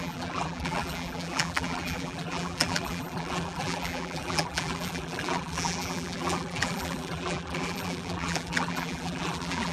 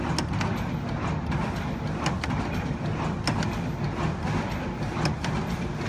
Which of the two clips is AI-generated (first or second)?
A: first